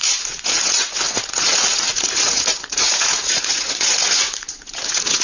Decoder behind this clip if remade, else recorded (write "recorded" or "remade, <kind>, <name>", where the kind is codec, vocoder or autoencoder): remade, vocoder, Vocos